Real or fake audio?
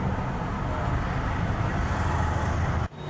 real